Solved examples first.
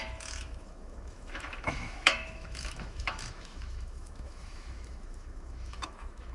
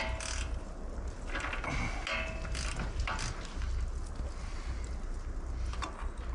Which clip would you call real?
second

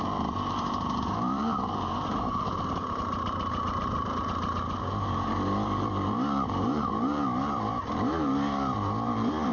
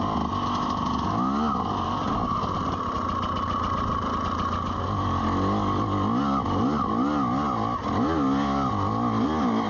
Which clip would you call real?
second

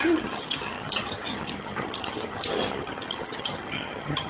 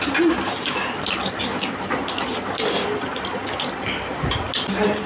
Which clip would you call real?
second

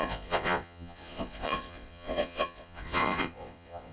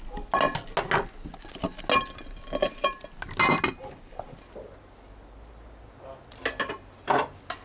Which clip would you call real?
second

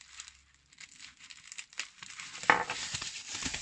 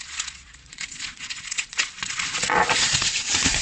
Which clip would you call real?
first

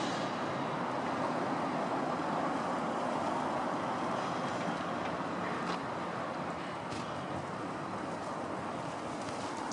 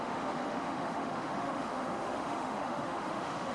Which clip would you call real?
first